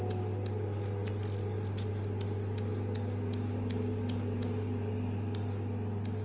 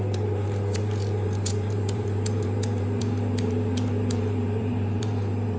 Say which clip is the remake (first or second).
second